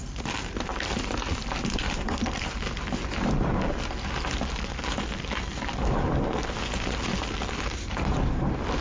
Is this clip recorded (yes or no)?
yes